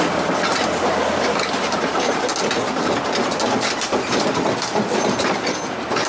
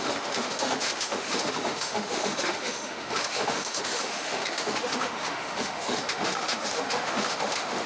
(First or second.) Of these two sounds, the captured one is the first